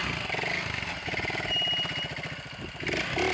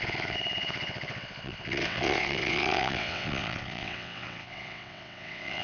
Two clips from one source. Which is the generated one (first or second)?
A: second